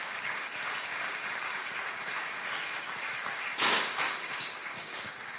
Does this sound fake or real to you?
fake